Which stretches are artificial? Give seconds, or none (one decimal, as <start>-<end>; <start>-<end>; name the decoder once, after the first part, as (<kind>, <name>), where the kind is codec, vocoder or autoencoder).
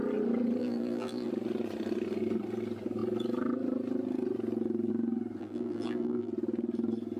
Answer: 0.6-1.3 (vocoder, BigVGAN v2); 5.4-6.3